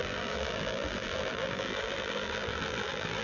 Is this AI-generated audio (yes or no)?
yes